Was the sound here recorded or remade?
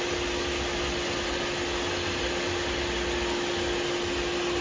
recorded